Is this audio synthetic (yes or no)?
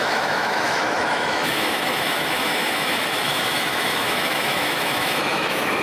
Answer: yes